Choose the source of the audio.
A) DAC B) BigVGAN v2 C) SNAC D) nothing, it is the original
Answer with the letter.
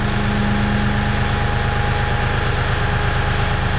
D